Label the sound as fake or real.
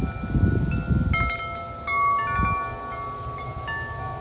real